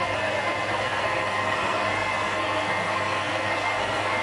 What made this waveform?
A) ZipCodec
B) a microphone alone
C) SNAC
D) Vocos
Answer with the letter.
C